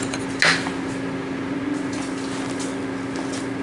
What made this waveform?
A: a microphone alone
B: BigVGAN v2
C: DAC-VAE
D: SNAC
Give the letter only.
A